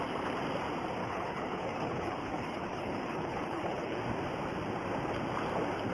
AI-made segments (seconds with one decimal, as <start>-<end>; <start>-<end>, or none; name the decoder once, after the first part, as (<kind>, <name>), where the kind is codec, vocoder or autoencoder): 1.0-4.0 (codec, HILCodec)